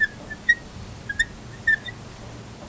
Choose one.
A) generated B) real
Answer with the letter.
B